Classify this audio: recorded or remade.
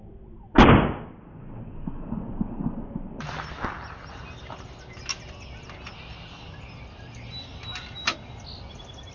recorded